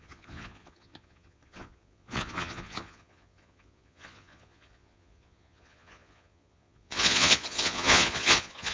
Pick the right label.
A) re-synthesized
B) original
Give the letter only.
A